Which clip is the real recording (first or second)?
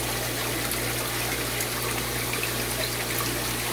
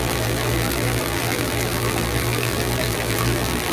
first